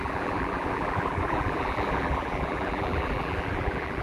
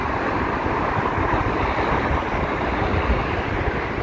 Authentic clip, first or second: second